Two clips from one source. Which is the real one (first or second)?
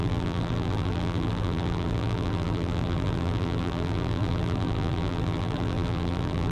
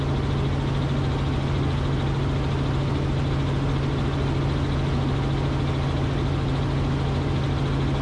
second